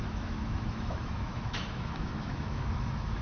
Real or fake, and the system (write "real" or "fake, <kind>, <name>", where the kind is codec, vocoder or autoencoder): fake, autoencoder, DAC-VAE